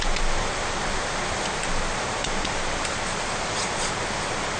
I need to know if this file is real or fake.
real